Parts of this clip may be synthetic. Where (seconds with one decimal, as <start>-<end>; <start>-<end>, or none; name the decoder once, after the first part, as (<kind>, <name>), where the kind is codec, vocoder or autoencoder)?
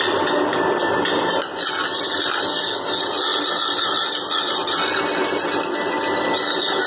none